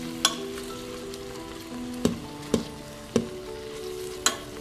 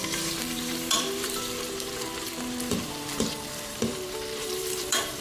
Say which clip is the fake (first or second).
second